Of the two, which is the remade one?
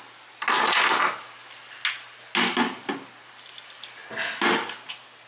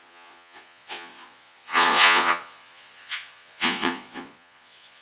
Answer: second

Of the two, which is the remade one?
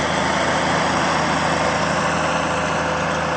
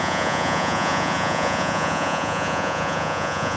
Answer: second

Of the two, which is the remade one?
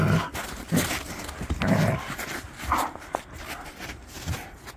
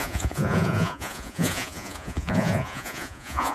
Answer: second